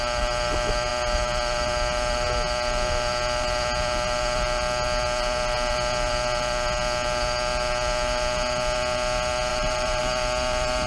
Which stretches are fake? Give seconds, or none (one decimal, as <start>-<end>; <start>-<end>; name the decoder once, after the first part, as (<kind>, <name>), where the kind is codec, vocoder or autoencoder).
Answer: 9.5-10.0 (vocoder, BigVGAN v2)